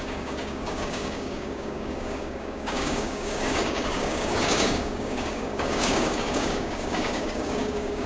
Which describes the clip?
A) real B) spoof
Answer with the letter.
B